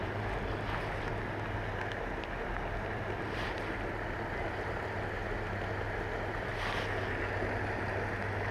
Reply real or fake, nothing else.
real